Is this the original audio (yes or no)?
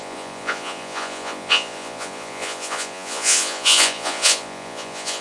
no